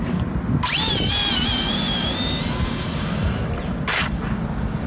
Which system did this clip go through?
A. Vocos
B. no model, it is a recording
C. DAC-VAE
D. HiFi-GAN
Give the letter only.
B